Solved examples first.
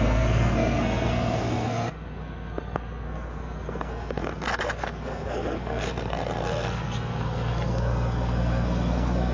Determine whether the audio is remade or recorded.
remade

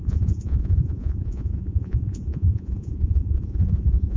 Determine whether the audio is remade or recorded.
remade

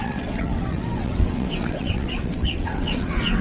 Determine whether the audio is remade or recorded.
remade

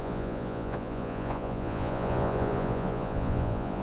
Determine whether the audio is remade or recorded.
remade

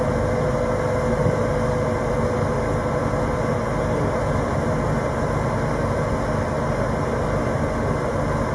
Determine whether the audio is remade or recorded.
recorded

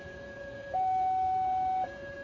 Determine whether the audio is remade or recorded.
remade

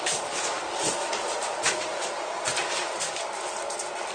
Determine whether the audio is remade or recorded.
recorded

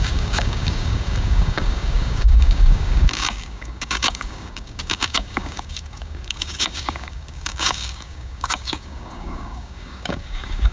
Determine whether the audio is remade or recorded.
remade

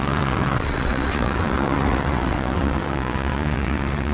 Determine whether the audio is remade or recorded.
remade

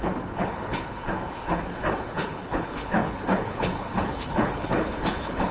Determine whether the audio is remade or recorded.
remade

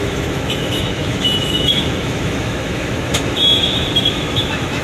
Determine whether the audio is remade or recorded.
remade